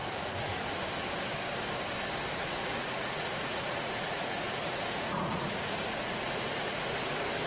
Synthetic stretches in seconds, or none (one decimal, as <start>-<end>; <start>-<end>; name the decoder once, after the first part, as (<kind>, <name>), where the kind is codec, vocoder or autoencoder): 0.0-0.8 (vocoder, Vocos); 2.4-6.9